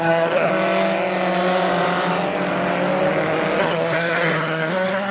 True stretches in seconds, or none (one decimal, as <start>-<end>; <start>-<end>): 0.5-3.6